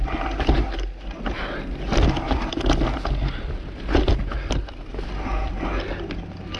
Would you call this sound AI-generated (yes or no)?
no